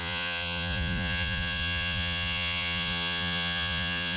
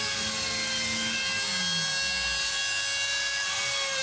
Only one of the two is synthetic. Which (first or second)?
first